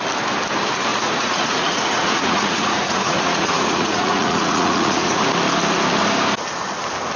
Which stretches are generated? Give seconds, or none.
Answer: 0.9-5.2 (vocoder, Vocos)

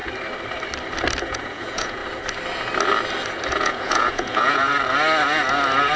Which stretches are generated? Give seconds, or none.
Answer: 1.2-2.0 (vocoder, Vocos); 3.5-4.7

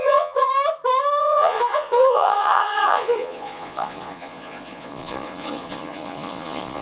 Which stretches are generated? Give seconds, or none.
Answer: 0.0-0.5 (vocoder, Vocos); 1.2-6.8

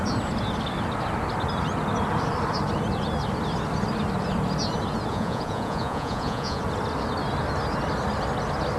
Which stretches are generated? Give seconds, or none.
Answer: 5.1-6.6 (vocoder, Vocos)

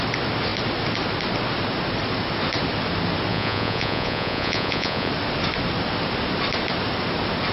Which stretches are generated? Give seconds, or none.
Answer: 3.3-5.1 (vocoder, Vocos)

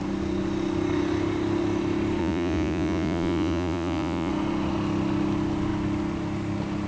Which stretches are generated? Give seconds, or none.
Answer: 2.2-4.3 (vocoder, Vocos)